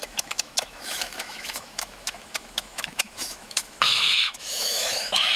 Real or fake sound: fake